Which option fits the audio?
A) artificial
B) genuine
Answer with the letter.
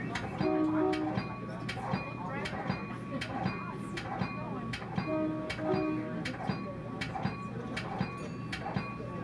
B